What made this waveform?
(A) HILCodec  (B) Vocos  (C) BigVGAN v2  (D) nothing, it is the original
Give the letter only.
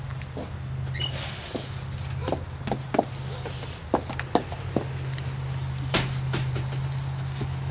D